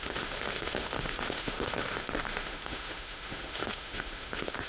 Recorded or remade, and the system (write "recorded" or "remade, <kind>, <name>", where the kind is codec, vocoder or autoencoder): remade, autoencoder, DAC-VAE